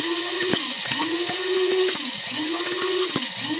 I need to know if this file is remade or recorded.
remade